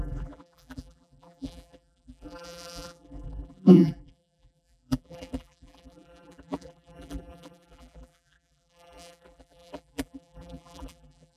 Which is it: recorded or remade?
remade